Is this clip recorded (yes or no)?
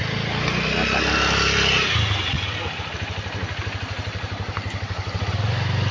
yes